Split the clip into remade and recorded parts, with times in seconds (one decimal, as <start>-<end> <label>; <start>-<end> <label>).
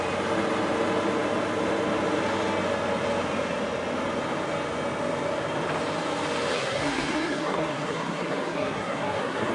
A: 0.0-6.5 recorded; 6.5-9.5 remade